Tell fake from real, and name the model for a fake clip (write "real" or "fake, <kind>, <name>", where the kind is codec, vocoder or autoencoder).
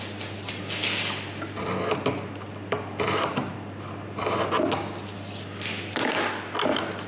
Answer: real